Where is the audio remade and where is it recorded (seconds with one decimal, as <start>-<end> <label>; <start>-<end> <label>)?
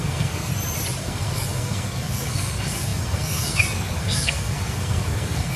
0.0-0.5 remade; 0.5-1.0 recorded; 1.0-5.6 remade